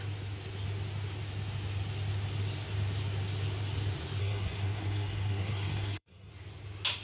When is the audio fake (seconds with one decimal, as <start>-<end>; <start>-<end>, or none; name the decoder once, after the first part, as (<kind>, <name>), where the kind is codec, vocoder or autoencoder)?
4.2-6.3 (codec, SNAC)